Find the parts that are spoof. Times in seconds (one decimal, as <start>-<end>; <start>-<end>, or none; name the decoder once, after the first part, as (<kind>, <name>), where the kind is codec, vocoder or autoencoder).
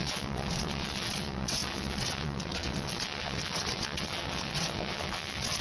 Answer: 0.0-5.6 (vocoder, WaveNeXt)